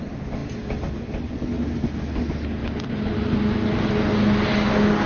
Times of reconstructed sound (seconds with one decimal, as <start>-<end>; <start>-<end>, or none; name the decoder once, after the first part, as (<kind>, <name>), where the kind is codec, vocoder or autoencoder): none

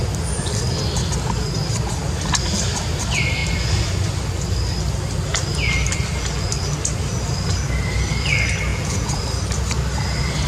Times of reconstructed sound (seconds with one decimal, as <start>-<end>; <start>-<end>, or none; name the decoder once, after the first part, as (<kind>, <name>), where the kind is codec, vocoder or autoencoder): 8.7-9.2 (vocoder, Vocos)

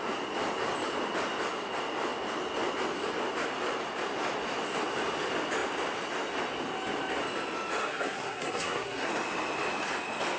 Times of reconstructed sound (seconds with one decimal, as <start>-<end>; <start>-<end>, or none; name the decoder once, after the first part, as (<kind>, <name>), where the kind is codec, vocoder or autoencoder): 7.8-9.1 (codec, SNAC)

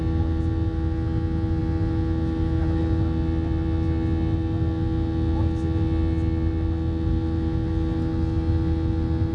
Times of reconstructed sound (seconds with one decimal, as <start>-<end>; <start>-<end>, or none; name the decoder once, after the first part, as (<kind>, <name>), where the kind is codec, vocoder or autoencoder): none

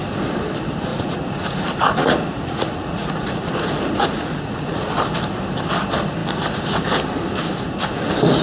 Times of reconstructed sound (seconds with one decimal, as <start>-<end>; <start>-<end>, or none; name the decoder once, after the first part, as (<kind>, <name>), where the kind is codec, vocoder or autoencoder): 0.9-3.5 (vocoder, Vocos); 4.0-4.9

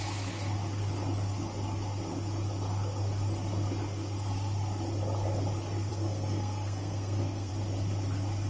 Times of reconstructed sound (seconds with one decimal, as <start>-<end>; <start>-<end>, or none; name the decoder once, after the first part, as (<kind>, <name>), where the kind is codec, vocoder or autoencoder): 5.9-7.5 (codec, SNAC)